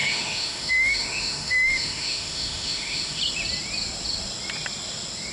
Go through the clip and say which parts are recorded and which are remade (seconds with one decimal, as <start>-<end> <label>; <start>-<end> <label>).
0.0-3.2 remade; 3.2-5.3 recorded